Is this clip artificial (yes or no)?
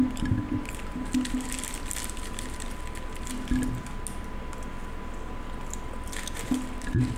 no